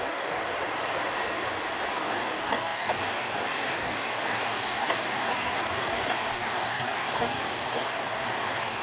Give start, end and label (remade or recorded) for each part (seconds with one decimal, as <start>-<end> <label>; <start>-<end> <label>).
0.0-0.4 remade; 0.4-1.9 recorded; 1.9-8.8 remade